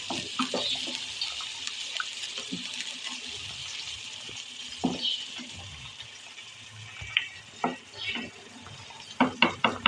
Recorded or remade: recorded